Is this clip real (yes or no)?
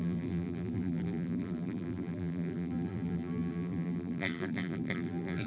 no